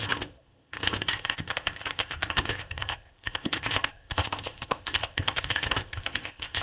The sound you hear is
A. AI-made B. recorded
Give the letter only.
A